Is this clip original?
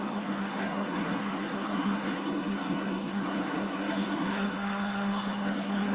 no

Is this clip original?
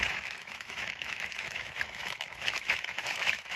no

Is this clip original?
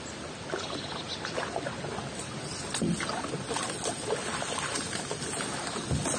yes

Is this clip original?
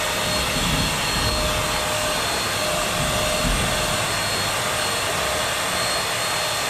yes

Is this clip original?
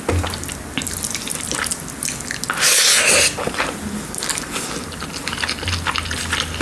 yes